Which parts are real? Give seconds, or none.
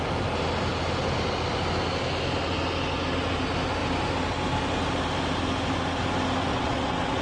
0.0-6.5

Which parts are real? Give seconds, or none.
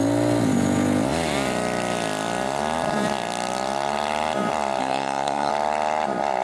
0.0-4.8; 5.5-6.4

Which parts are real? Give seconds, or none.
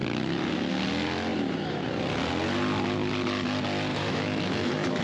0.0-3.9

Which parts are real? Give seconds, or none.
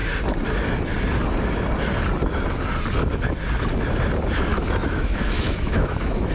0.0-4.5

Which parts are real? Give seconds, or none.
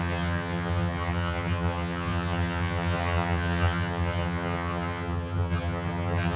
none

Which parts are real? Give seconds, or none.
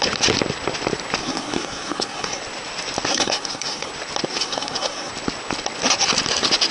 0.0-1.2; 2.4-3.1; 3.9-4.3; 5.1-6.7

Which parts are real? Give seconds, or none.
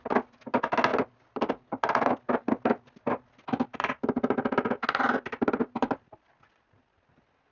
0.0-7.5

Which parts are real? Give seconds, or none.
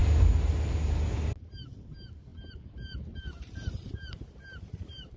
0.0-2.3